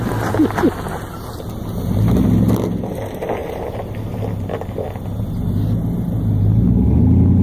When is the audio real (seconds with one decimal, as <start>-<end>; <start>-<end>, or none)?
0.0-7.4